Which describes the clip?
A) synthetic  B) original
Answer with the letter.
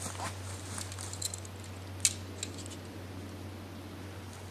B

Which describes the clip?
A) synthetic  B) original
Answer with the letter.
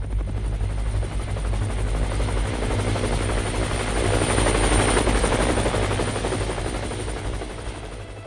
B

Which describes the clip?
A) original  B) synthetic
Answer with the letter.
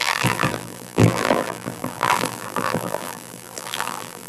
B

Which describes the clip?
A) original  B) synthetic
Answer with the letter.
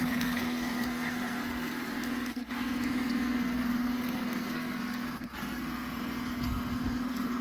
B